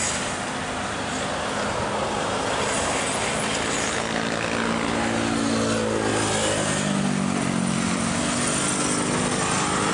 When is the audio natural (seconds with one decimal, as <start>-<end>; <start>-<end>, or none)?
0.0-9.9